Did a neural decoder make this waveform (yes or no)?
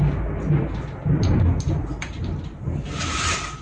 no